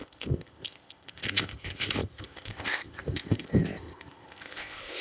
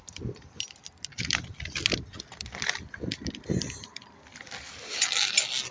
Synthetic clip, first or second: first